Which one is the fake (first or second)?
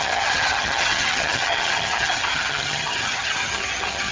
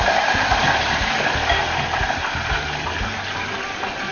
first